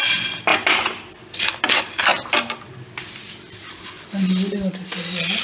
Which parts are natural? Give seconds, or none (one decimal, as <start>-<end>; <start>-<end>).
0.0-5.4